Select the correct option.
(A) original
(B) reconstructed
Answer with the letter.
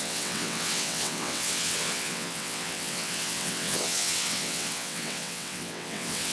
B